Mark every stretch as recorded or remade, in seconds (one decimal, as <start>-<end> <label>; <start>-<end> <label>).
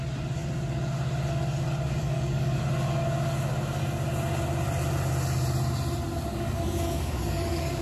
0.0-2.0 recorded; 2.0-2.6 remade; 2.6-6.3 recorded; 6.3-7.8 remade